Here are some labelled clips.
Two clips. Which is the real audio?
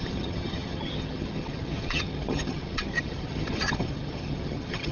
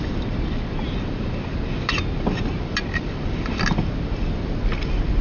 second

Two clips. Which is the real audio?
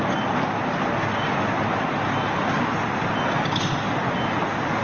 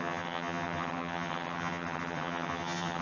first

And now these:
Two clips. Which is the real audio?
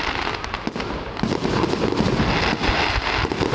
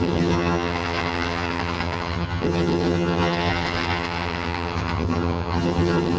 first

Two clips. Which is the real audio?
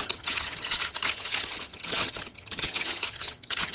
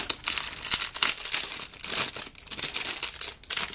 second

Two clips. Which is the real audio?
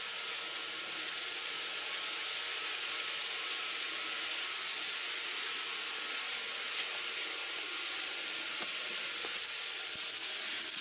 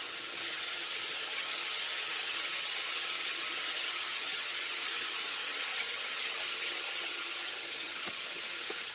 first